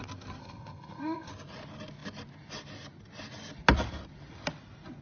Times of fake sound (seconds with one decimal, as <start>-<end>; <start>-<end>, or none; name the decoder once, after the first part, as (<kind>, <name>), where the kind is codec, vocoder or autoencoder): 0.4-1.3 (codec, SNAC)